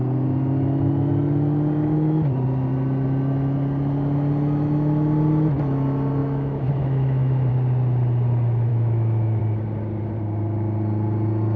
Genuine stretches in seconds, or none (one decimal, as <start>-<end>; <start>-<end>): 0.0-6.2; 7.5-8.7; 9.4-11.6